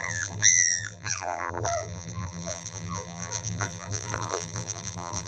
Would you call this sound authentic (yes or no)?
no